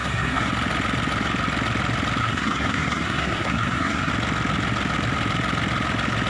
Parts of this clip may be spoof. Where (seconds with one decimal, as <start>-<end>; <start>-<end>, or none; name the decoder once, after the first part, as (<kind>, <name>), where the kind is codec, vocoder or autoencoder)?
0.0-0.5 (codec, SNAC); 2.2-4.1